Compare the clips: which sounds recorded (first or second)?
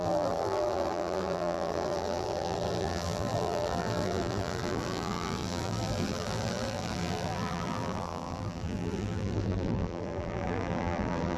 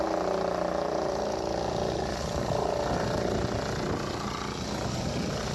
second